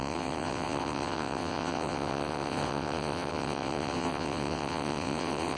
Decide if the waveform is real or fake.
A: fake